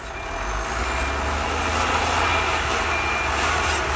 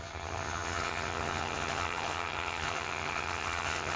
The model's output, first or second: second